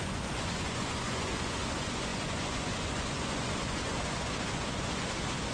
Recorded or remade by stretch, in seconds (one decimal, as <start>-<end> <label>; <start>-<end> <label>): 0.0-5.5 remade